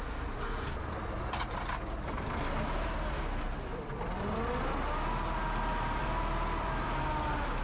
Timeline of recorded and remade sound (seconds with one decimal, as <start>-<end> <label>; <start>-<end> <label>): 0.0-3.4 recorded; 3.4-4.2 remade; 4.2-5.7 recorded; 5.7-7.1 remade; 7.1-7.6 recorded